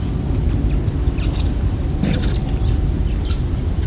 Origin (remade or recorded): recorded